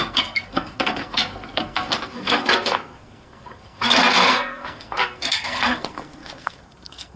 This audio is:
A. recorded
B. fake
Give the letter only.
B